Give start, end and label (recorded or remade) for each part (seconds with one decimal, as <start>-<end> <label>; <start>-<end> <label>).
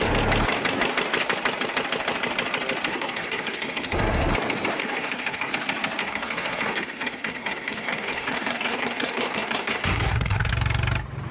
0.0-2.9 recorded; 2.9-4.3 remade; 4.3-4.8 recorded; 4.8-5.5 remade; 5.5-6.0 recorded; 6.0-10.5 remade; 10.5-11.3 recorded